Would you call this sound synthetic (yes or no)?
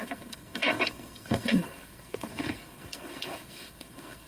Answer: yes